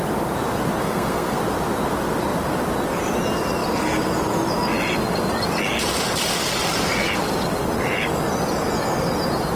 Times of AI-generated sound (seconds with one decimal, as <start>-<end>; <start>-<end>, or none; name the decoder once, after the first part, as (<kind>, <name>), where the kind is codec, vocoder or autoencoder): 0.8-1.4 (codec, SNAC)